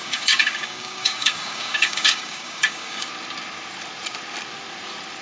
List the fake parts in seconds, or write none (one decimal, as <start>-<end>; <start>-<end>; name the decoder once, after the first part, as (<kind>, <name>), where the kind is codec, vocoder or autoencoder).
0.0-3.1 (codec, DAC)